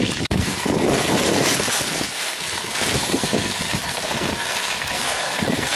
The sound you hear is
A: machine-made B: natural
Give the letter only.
A